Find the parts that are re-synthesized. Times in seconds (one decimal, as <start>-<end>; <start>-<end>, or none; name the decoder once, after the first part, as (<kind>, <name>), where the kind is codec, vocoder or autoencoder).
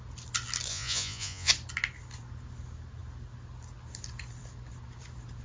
0.7-1.5 (vocoder, Vocos)